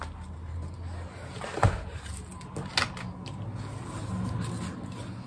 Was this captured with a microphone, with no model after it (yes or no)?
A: yes